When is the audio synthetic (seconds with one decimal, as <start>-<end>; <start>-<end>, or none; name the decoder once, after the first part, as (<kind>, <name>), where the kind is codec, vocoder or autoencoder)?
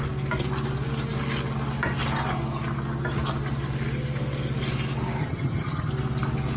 5.2-5.9 (vocoder, HiFi-GAN)